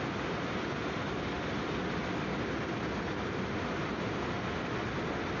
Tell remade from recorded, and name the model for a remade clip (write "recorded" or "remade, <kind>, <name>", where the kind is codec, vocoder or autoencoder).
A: recorded